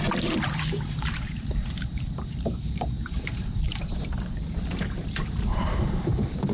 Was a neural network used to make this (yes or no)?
yes